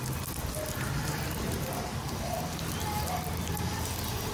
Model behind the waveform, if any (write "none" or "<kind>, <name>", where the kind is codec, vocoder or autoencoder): none